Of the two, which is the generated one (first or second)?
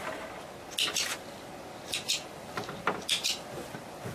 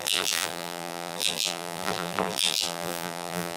second